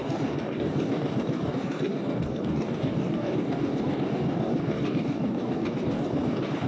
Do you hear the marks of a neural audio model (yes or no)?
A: yes